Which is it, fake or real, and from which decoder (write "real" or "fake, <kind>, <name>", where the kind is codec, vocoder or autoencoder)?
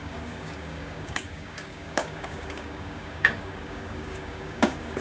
fake, codec, DAC